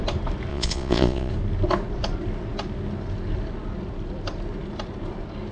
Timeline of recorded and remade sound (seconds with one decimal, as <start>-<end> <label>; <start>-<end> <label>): 0.0-0.5 recorded; 0.5-1.3 remade; 1.3-5.5 recorded

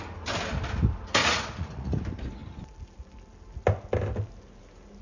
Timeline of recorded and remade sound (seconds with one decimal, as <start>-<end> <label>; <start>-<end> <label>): 0.0-1.2 recorded; 1.2-2.0 remade; 2.0-5.0 recorded

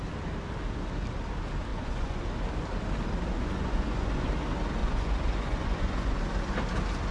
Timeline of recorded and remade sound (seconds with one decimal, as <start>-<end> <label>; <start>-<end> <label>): 0.0-1.7 recorded; 1.7-2.2 remade; 2.2-3.3 recorded; 3.3-4.3 remade; 4.3-4.8 recorded; 4.8-6.2 remade; 6.2-7.1 recorded

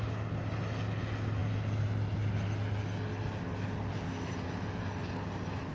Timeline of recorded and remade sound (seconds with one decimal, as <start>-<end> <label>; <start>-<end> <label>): 0.0-5.7 recorded

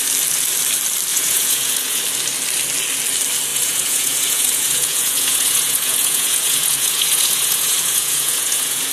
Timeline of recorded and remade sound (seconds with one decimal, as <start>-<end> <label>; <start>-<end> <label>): 0.0-1.1 recorded; 1.1-2.0 remade; 2.0-3.5 recorded; 3.5-8.9 remade

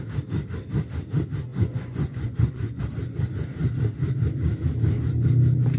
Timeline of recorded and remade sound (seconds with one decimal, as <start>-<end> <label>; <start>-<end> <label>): 0.0-1.5 recorded; 1.5-2.8 remade; 2.8-5.8 recorded

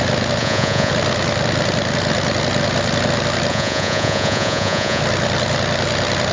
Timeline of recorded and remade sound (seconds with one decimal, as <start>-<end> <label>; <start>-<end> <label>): 0.0-0.4 recorded; 0.4-0.9 remade; 0.9-3.5 recorded; 3.5-5.0 remade; 5.0-6.3 recorded